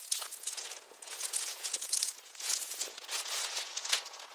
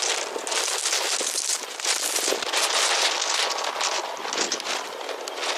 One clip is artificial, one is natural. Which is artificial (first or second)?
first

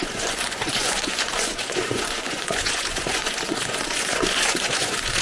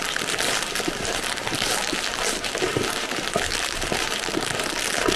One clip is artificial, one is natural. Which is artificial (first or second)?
first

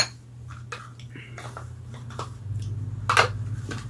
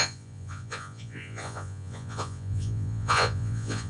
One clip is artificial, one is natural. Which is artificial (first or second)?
second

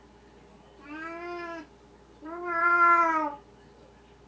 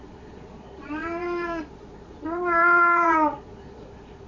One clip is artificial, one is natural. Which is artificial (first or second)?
second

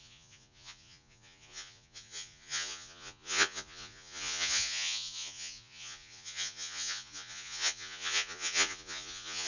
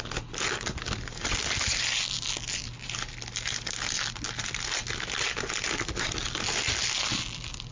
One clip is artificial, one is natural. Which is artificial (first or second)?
first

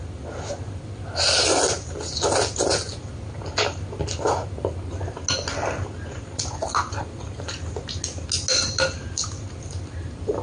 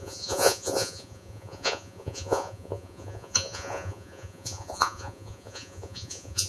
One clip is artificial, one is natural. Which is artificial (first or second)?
second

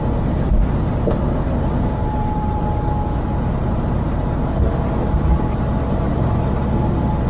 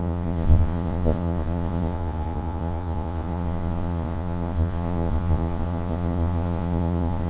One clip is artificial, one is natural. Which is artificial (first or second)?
second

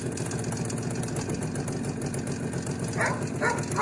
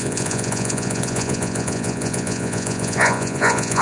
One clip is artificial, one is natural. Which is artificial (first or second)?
second